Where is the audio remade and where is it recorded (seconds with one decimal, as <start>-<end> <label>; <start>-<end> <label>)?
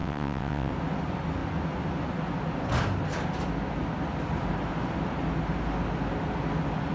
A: 0.0-0.7 remade; 0.7-6.9 recorded